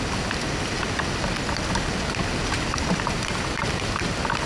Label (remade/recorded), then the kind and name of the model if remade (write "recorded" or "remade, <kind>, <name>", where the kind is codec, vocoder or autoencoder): recorded